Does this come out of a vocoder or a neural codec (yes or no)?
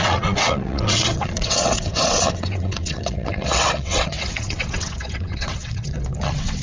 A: yes